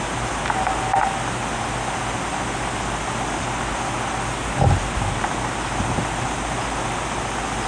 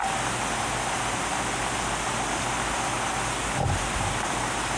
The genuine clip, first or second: first